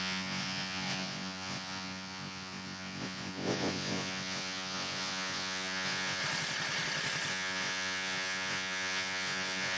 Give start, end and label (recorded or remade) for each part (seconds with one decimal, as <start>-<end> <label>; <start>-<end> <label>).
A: 0.0-6.2 remade; 6.2-7.3 recorded; 7.3-9.8 remade